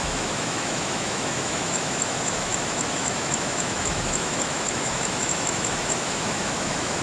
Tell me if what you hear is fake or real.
fake